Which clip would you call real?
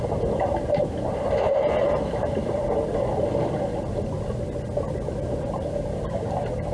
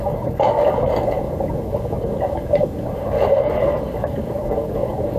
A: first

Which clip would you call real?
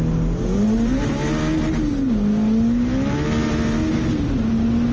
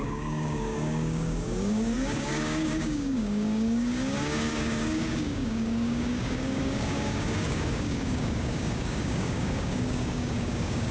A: first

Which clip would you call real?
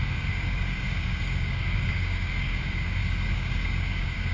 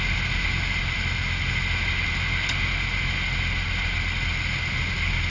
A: second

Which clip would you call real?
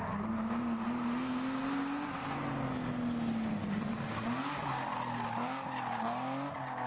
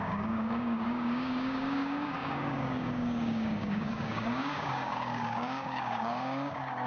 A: first